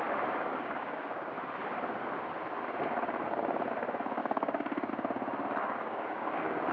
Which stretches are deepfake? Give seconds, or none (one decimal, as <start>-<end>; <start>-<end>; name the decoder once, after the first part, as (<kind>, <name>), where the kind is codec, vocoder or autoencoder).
0.5-1.3 (codec, DAC); 4.2-4.9; 5.6-6.7